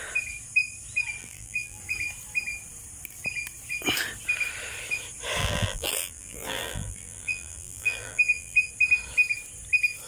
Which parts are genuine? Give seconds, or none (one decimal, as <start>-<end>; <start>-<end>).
0.0-1.2; 1.8-5.4; 8.7-10.1